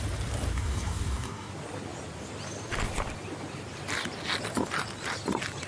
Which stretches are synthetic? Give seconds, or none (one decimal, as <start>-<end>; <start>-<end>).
0.5-1.5